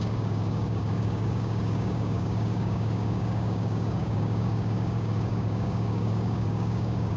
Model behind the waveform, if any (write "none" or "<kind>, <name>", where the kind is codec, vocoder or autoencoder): codec, DAC